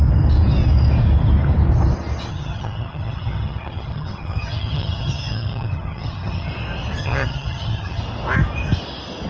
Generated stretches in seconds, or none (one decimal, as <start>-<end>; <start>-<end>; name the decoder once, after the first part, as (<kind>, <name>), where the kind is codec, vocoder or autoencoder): 2.3-6.5 (vocoder, HiFi-GAN); 7.0-8.0